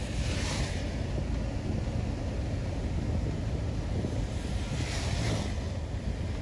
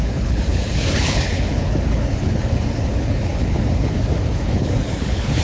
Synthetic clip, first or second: second